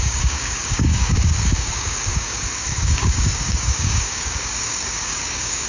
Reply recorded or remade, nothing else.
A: remade